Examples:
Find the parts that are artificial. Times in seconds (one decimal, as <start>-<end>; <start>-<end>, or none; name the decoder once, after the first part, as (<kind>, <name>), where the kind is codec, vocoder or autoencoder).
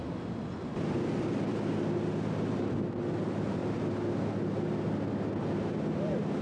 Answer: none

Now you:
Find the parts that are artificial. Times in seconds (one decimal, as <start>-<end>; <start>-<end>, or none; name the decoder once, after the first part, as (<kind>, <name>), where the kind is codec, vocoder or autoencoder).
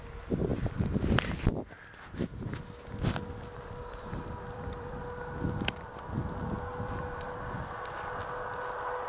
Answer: 0.5-1.5 (vocoder, BigVGAN v2); 3.8-5.0; 6.7-7.5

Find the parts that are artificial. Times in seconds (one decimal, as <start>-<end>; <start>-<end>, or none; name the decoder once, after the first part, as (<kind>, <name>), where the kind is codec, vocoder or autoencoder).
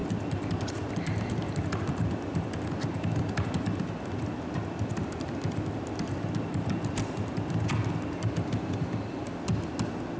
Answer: none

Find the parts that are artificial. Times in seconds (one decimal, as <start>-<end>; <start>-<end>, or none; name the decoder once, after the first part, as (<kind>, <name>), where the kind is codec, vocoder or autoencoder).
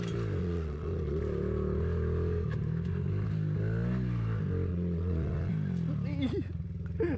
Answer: 0.4-1.2 (vocoder, Vocos); 4.7-5.5